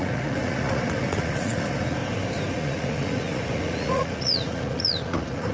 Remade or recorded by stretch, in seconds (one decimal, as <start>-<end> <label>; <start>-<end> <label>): 0.0-2.0 remade; 2.0-2.5 recorded; 2.5-5.5 remade

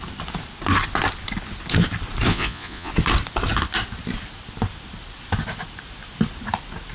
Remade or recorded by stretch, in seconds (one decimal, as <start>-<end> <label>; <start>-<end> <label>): 0.0-2.3 recorded; 2.3-2.9 remade; 2.9-6.9 recorded

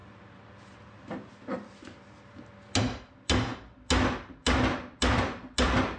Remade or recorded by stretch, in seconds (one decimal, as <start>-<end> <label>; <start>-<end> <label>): 0.0-6.0 recorded